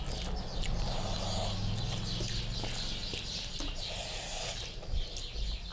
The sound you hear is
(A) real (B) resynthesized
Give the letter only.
A